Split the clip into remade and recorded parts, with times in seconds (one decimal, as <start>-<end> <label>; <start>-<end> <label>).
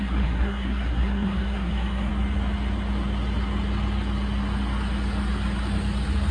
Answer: 0.0-2.1 remade; 2.1-6.3 recorded